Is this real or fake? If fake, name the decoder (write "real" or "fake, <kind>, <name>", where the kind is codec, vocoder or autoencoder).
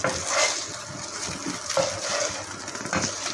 real